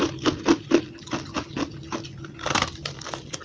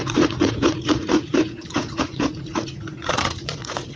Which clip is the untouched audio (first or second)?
first